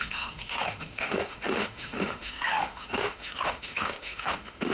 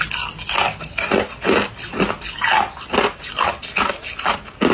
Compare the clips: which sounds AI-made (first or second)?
first